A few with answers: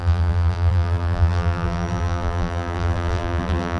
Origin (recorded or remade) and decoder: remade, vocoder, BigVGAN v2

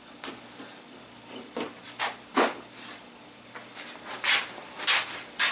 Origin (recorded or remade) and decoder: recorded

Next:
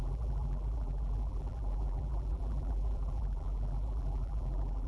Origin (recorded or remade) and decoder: remade, vocoder, BigVGAN v2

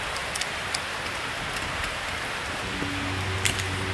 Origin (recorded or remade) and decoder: recorded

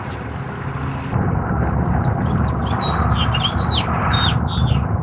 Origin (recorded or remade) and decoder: recorded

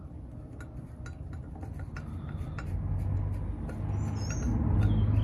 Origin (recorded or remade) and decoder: recorded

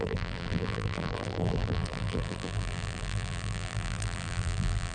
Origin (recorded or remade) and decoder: remade, vocoder, BigVGAN v2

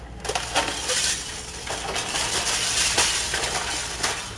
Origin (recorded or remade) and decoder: recorded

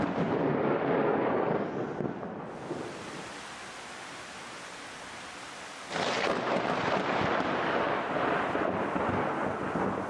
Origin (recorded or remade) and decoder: recorded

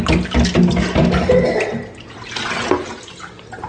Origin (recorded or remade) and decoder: recorded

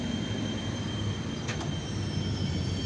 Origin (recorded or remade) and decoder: recorded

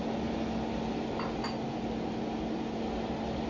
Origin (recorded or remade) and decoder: recorded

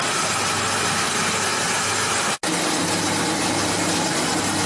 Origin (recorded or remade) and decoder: recorded